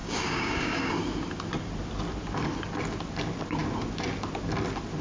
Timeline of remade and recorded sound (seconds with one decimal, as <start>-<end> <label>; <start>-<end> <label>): 0.0-0.9 remade; 0.9-5.0 recorded